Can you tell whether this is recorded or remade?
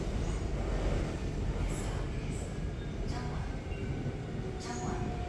recorded